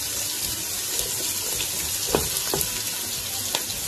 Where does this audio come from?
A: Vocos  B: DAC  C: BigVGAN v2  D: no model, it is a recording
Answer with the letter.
D